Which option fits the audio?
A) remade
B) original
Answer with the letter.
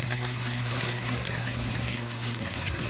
A